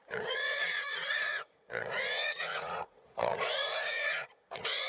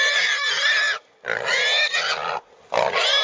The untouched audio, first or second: second